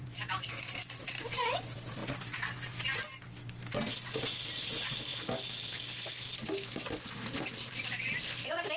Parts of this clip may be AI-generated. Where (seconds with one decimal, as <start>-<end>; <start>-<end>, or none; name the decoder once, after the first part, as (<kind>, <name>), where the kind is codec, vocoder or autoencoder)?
none